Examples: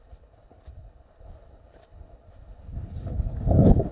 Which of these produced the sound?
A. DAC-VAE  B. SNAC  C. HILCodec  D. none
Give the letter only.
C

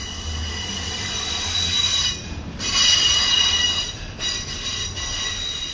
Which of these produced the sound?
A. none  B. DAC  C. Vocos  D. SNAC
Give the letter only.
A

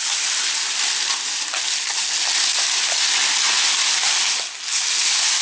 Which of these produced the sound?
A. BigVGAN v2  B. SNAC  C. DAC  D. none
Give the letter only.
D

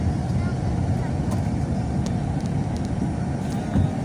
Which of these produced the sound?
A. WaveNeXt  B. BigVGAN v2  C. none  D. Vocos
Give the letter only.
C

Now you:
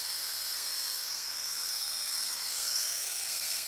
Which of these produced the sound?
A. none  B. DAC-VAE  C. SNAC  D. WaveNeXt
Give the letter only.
C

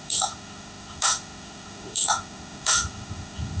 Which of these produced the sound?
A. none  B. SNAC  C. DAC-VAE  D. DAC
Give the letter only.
C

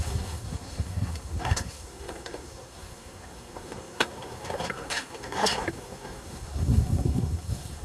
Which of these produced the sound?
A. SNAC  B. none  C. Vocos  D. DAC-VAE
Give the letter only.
A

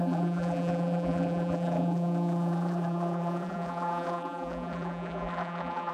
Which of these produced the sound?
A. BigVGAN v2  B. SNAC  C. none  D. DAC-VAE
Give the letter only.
A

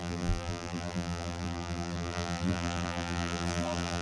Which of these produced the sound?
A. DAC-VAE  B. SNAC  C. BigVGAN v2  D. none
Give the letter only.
C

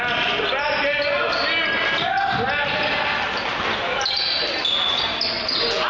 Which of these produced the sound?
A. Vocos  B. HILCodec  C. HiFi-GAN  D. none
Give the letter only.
D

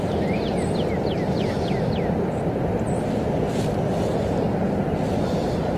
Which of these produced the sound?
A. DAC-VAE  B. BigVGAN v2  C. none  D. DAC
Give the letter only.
C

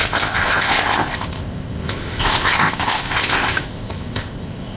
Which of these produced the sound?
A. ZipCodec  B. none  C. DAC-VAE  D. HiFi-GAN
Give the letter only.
A